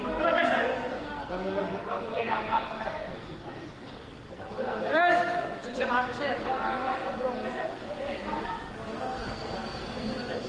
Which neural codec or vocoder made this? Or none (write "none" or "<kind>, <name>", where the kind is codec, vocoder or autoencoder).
codec, SNAC